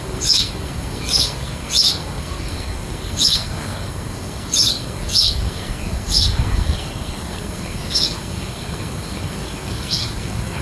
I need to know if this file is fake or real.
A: fake